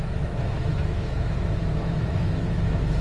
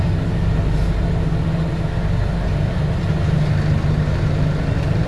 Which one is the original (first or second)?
second